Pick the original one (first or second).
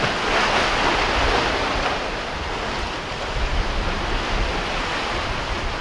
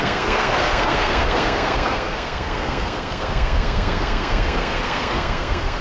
first